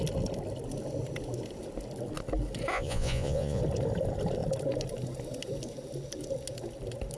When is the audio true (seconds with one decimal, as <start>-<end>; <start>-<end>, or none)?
0.0-2.7; 3.6-7.2

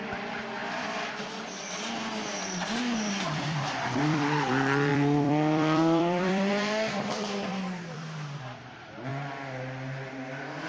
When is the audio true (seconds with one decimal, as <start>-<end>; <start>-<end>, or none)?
0.6-3.2; 9.1-10.7

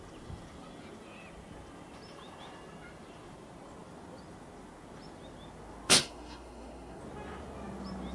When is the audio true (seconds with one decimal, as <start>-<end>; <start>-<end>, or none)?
0.0-6.0; 7.0-8.1

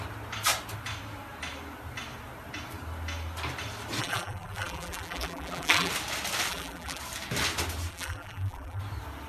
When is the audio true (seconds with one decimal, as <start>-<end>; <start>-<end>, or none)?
0.0-4.0; 5.9-6.5; 7.0-7.9; 8.8-9.3

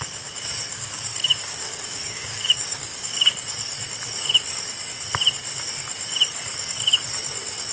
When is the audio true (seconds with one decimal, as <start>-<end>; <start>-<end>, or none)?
0.0-0.7; 3.3-7.7